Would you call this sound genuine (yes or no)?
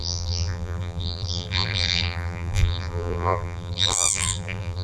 no